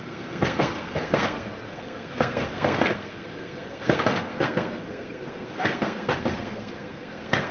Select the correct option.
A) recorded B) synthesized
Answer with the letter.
B